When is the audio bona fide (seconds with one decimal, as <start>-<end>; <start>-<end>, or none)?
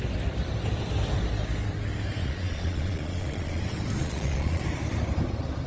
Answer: 0.0-2.2; 3.6-4.0; 4.6-5.7